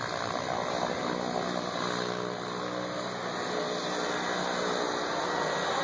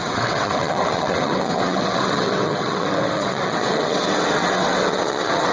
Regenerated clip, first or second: second